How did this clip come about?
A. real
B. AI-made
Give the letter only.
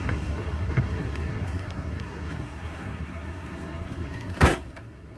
B